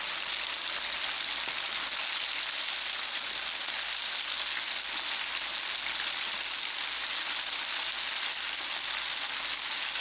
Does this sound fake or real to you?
real